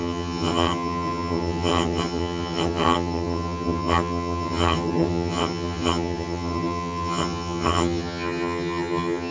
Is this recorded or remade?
remade